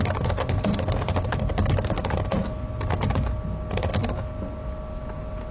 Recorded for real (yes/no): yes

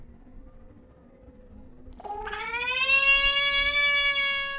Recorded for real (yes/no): yes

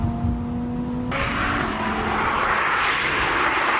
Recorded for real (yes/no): yes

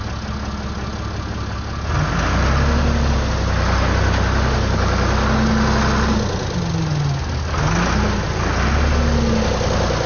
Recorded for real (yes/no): yes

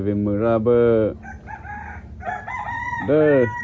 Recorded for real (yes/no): yes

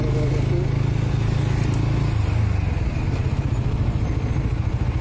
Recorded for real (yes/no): yes